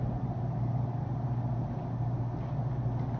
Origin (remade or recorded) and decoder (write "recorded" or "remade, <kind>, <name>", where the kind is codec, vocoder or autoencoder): recorded